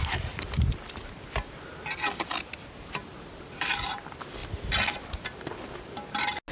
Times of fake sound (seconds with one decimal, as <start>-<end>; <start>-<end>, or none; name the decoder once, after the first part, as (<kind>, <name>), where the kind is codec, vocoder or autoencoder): none